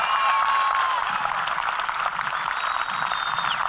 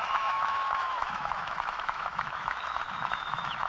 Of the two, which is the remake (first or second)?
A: second